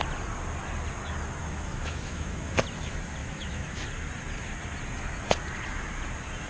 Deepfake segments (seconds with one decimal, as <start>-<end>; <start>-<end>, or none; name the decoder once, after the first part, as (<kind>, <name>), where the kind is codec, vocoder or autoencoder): 1.4-2.5 (autoencoder, DAC-VAE); 3.2-3.8